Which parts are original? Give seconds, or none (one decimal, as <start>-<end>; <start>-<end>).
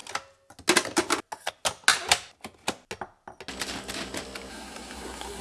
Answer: 0.0-4.5